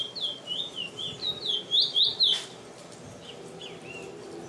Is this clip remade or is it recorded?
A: recorded